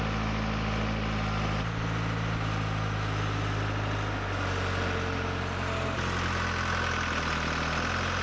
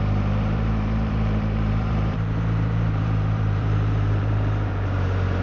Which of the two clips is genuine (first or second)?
first